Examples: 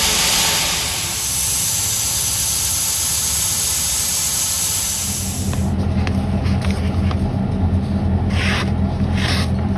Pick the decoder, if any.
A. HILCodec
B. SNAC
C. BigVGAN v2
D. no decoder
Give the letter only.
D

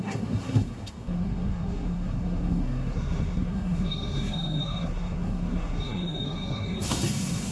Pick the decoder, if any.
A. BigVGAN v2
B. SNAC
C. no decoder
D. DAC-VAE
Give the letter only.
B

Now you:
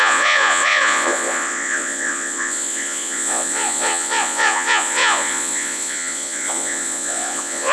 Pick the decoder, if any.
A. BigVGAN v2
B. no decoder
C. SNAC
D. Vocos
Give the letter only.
D